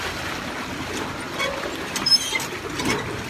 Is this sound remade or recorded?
recorded